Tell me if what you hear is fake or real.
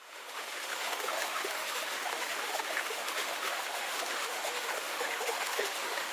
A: fake